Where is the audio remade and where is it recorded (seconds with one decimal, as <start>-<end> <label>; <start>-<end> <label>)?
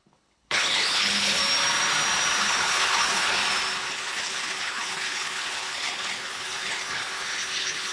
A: 0.0-1.4 remade; 1.4-2.4 recorded; 2.4-3.4 remade; 3.4-3.9 recorded; 3.9-7.9 remade